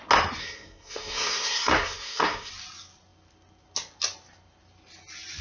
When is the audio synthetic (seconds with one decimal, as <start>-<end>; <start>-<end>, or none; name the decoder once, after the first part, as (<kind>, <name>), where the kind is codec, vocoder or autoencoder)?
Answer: 0.4-2.5 (codec, SNAC)